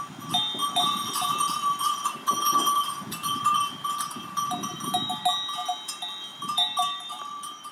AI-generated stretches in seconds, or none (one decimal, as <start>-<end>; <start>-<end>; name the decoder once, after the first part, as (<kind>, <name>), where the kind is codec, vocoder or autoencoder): 0.6-5.2 (vocoder, BigVGAN v2); 6.3-7.7